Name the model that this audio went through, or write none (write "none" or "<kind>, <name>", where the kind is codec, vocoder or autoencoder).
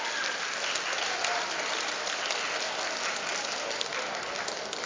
none